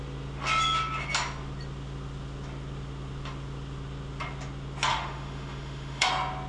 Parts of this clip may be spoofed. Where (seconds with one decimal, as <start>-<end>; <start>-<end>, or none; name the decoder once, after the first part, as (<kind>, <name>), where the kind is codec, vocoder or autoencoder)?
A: 4.9-6.1 (autoencoder, DAC-VAE)